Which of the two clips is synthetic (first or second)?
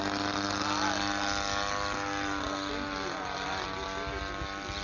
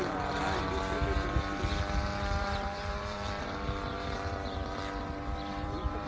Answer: second